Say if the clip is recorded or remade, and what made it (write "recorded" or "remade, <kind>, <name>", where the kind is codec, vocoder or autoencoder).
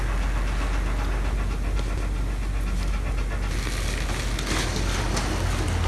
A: recorded